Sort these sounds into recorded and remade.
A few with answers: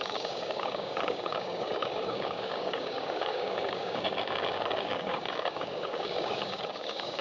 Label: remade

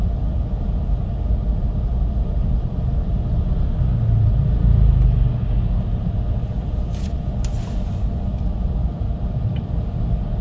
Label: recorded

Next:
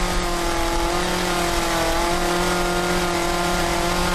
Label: recorded